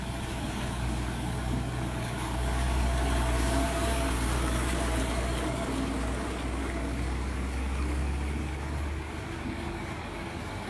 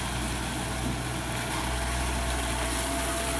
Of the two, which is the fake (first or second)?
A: first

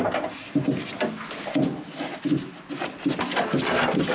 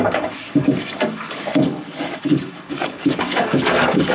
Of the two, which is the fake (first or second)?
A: second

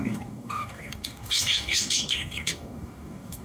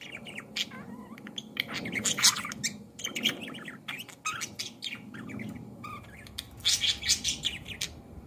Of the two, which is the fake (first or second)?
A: first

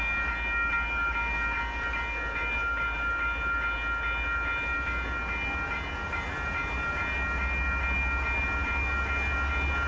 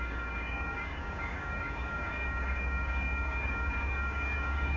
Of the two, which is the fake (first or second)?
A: second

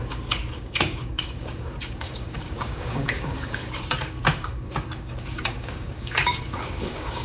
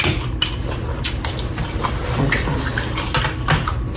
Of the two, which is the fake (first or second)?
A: first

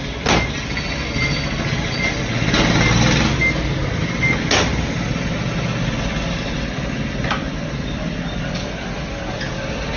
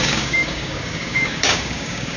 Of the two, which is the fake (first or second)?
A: second